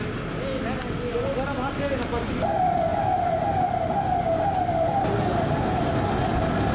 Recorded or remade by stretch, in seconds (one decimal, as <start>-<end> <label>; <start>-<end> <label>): 0.0-6.7 recorded